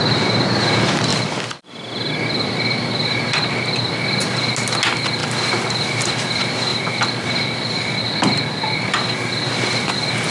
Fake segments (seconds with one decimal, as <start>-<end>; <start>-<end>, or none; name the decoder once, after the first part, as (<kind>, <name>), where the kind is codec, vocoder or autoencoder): 1.1-3.2 (vocoder, BigVGAN v2); 6.7-8.0